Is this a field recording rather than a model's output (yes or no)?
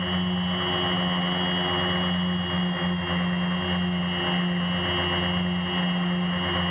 yes